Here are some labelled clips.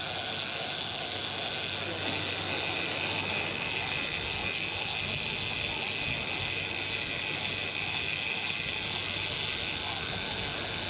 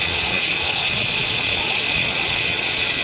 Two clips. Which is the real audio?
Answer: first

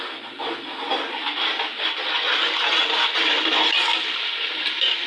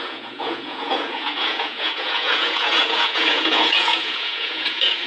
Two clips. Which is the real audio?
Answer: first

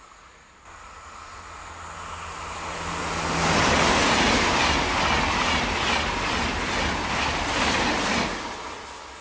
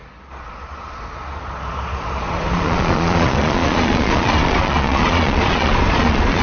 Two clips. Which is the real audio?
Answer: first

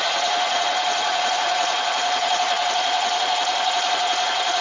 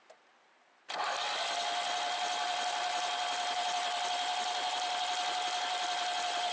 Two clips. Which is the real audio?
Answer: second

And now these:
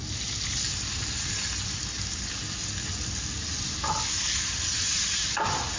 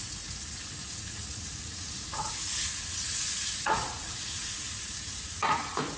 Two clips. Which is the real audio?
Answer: first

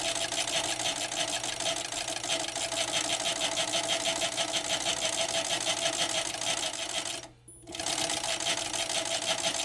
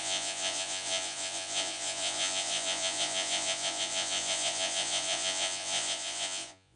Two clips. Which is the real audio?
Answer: first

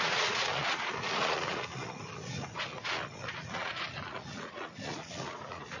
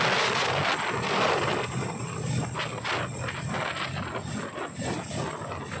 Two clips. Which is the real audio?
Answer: second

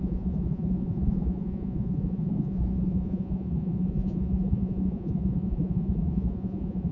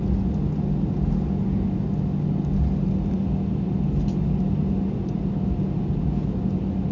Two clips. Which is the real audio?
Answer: second